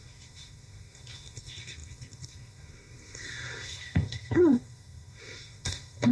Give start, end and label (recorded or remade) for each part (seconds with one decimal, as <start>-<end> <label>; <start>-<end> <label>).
0.0-6.1 remade